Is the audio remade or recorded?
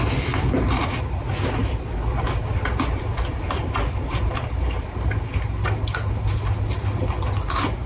recorded